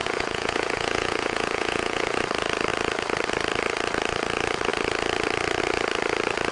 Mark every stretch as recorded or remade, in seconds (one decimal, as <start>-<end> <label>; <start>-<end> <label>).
0.0-2.2 remade; 2.2-6.5 recorded